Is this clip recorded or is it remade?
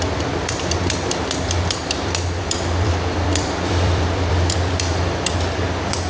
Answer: remade